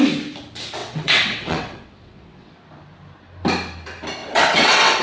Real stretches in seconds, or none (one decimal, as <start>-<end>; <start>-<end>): 0.0-0.8; 2.5-4.2